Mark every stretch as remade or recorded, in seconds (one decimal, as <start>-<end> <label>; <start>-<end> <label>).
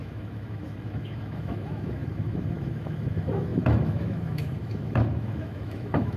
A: 0.0-6.2 remade